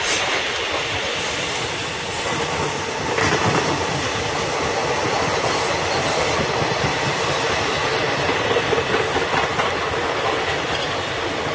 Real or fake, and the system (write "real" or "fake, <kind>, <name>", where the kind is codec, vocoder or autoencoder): real